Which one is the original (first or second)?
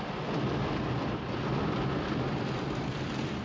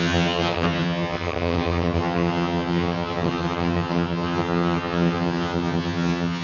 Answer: first